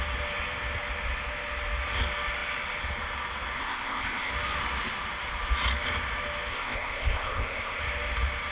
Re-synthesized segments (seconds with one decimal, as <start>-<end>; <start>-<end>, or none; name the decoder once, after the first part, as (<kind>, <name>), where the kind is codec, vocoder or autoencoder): 3.6-4.3 (codec, ZipCodec); 6.5-7.8